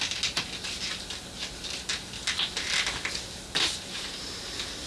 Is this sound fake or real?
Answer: real